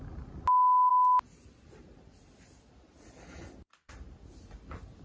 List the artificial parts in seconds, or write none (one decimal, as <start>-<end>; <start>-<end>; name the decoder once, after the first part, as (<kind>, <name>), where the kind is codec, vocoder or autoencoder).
none